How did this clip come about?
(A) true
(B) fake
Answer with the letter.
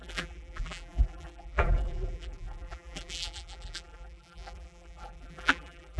B